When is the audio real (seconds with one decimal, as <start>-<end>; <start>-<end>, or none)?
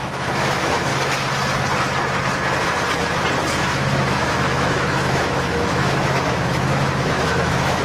0.9-3.6